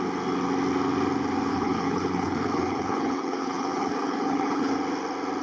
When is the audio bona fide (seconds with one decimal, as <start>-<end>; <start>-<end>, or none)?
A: 0.0-1.5; 4.7-5.4